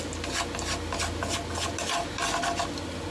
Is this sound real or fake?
real